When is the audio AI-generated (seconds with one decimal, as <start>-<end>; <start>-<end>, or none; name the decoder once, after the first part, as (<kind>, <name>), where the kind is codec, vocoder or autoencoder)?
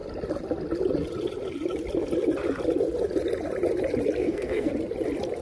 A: 4.2-4.7 (codec, SNAC)